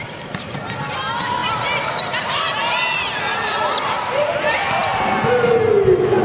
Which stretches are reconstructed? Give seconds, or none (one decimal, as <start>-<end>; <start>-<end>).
1.4-3.2